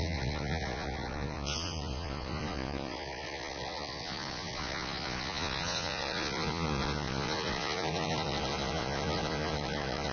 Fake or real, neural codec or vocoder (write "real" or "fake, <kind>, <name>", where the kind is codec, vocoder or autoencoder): fake, vocoder, Vocos